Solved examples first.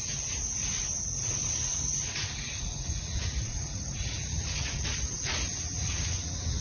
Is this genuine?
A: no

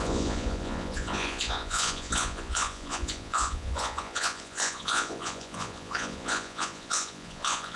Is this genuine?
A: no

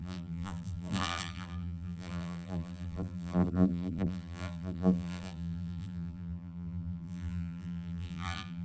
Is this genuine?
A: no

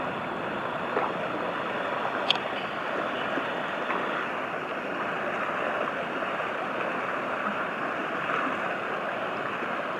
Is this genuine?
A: yes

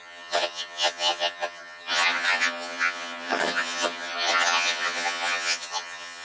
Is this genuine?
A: no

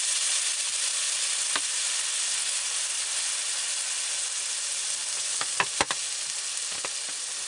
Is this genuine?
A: yes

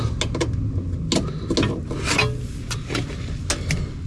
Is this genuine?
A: yes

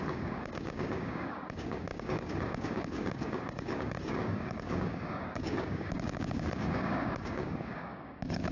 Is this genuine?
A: no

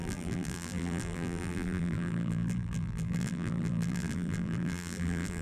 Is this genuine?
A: no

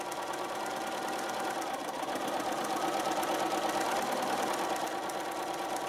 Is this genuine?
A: yes